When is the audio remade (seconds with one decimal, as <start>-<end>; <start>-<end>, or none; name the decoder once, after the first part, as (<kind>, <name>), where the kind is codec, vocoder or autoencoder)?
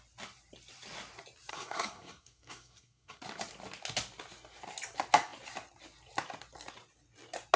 1.5-3.2 (codec, SNAC)